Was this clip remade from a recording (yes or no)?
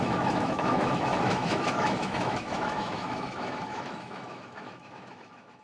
yes